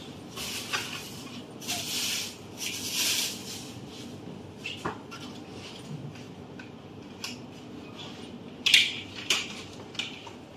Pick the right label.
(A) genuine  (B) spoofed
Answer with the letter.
A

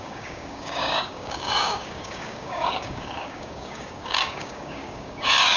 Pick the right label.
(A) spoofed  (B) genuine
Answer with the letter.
A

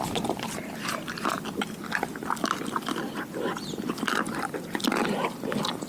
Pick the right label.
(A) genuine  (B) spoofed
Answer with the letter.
A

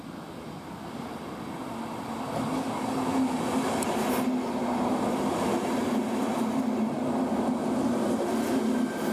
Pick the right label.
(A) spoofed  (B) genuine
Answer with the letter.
B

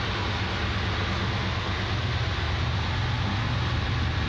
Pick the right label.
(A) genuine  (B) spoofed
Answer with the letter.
A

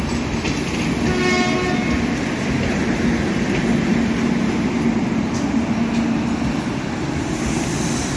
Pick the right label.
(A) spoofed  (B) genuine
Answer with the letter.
B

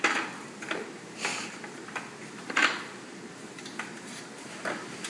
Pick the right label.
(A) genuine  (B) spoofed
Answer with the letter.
B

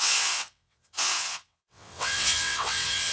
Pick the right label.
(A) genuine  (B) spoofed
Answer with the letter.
B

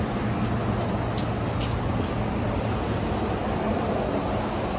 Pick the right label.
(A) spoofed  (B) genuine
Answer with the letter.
B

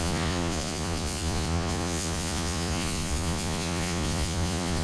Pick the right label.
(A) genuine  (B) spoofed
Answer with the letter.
B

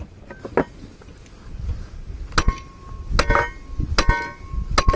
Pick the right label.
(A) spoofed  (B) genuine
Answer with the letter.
B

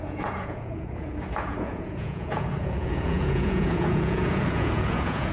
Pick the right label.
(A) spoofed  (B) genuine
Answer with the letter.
A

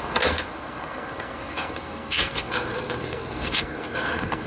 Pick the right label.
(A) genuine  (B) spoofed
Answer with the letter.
B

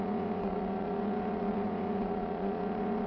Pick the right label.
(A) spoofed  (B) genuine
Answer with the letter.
A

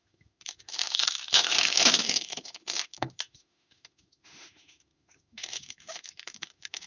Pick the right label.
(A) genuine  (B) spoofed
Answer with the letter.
B